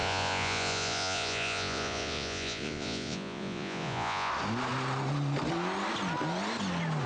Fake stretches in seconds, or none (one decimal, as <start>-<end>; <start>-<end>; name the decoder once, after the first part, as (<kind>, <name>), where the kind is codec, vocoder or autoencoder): 0.0-4.3 (vocoder, Vocos)